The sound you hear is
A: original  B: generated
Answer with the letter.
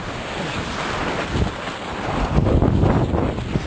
A